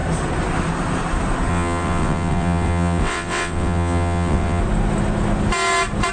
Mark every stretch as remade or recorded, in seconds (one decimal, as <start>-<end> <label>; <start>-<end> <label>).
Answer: 0.0-1.5 recorded; 1.5-4.6 remade; 4.6-6.1 recorded

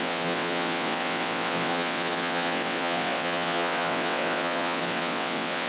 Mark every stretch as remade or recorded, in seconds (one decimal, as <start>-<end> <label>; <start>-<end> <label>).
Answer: 0.0-5.7 remade

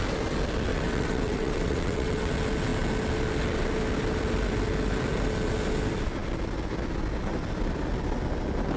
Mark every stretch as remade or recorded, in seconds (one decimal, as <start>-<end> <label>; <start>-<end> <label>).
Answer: 0.0-0.7 recorded; 0.7-2.3 remade; 2.3-8.8 recorded

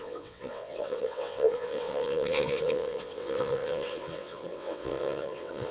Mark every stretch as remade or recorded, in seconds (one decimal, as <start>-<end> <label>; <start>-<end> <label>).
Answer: 0.0-5.7 remade

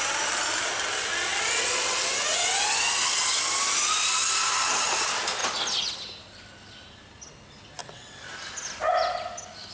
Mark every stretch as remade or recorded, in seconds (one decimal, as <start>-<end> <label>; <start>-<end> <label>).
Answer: 0.0-7.8 recorded; 7.8-8.3 remade; 8.3-9.7 recorded